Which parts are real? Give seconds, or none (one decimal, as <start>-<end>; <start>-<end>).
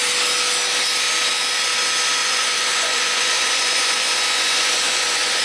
0.0-2.2